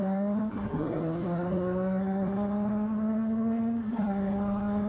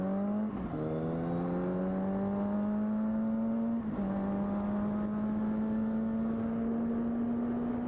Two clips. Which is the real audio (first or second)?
second